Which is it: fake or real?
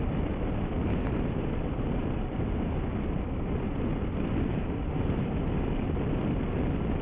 real